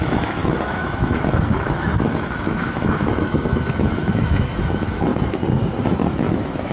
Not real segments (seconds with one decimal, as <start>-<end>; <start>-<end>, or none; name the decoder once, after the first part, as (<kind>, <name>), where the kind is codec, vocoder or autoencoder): 0.0-5.1 (autoencoder, DAC-VAE); 6.1-6.7